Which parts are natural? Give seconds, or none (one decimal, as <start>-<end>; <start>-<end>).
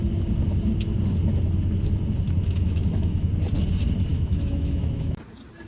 0.0-2.4; 3.3-4.1; 5.2-5.7